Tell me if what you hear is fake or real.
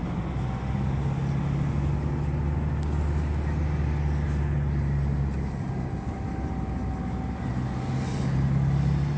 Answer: real